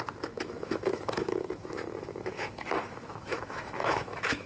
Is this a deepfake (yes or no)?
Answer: yes